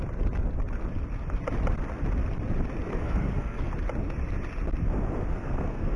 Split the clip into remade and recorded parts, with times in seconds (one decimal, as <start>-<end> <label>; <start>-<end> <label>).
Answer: 0.0-2.9 recorded; 2.9-3.7 remade; 3.7-5.3 recorded; 5.3-6.0 remade